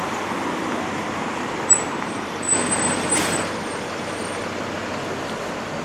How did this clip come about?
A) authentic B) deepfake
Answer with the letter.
A